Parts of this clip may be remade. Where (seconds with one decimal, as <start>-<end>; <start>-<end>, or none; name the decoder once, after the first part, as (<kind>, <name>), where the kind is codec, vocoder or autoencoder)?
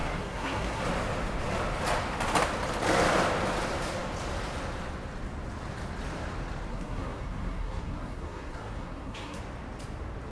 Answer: 0.0-0.8 (codec, SNAC); 6.7-9.4